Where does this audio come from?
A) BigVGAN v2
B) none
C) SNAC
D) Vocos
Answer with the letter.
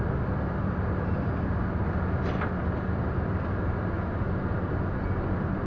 B